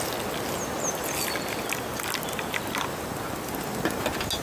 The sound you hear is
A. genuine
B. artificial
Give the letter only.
A